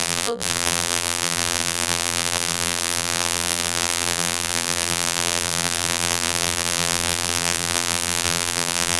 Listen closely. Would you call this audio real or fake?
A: fake